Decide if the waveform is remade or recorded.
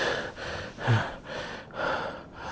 recorded